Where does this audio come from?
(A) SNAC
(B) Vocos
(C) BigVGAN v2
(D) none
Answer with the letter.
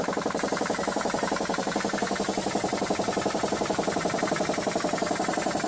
C